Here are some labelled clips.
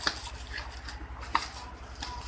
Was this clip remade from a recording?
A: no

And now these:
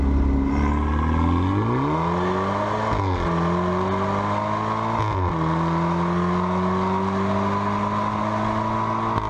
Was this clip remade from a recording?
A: no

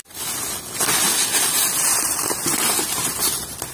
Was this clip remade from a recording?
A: no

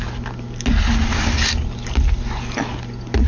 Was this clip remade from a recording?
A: no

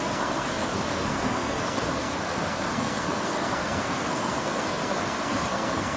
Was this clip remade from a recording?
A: yes